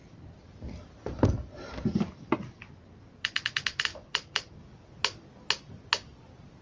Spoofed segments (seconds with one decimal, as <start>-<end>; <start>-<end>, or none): 3.9-4.5